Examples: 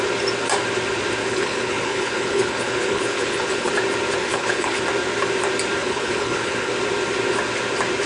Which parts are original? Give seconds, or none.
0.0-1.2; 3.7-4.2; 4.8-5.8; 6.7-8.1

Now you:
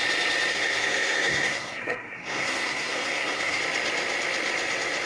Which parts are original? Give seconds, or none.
0.0-0.5; 3.6-5.1